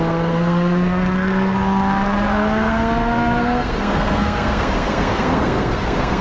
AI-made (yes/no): yes